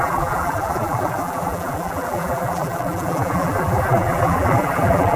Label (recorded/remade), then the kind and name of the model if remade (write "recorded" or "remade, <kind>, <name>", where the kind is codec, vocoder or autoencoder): remade, vocoder, BigVGAN v2